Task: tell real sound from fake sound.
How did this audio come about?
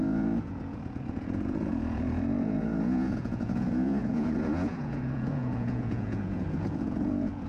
fake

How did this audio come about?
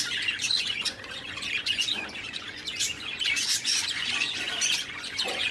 fake